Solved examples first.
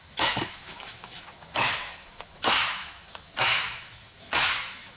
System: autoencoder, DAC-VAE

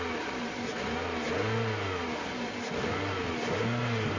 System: none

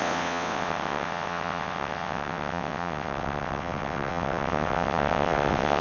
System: vocoder, WaveNeXt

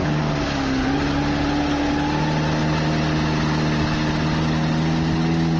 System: none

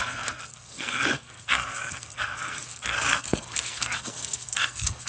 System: codec, SNAC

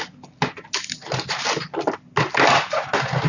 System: none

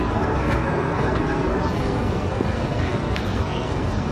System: codec, SNAC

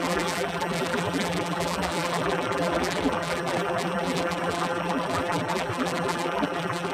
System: vocoder, BigVGAN v2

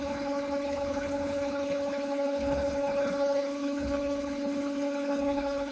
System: codec, HILCodec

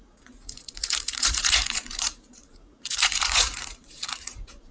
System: vocoder, Vocos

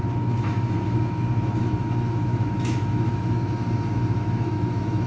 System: autoencoder, DAC-VAE